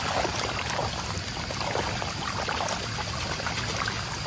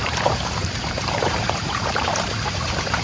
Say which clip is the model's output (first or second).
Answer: second